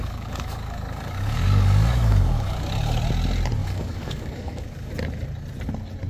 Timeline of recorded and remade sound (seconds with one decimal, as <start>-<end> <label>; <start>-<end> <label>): 0.0-2.7 remade; 2.7-3.6 recorded; 3.6-4.9 remade; 4.9-6.1 recorded